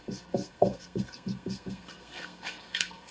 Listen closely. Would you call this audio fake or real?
fake